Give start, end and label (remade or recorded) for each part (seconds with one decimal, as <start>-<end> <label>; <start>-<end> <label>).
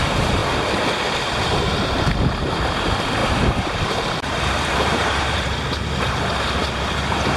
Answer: 0.0-0.4 remade; 0.4-1.2 recorded; 1.2-7.4 remade